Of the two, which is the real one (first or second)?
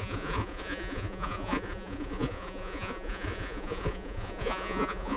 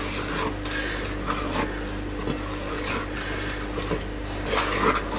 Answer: second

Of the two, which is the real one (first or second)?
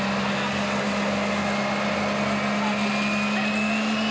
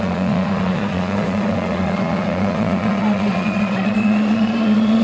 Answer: first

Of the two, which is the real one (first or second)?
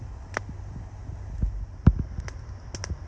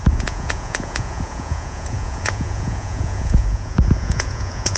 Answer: first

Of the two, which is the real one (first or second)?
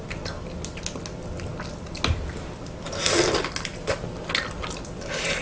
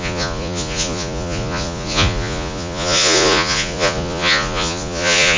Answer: first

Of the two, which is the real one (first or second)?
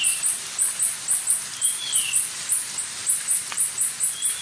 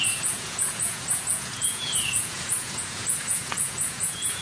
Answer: first